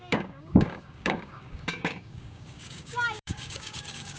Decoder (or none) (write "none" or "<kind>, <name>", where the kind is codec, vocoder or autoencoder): codec, DAC